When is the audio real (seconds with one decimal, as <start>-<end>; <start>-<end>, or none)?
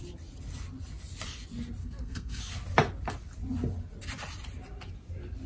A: 0.0-1.8; 2.4-5.5